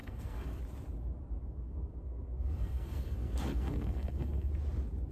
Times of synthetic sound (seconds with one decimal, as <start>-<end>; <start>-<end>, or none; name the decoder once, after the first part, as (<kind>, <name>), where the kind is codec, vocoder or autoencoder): 0.0-0.6 (codec, SNAC); 1.4-4.5